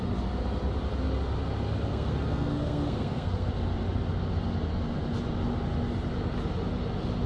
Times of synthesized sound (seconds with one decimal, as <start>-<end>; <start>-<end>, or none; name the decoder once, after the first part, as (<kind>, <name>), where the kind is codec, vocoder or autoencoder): 1.9-3.5 (codec, SNAC)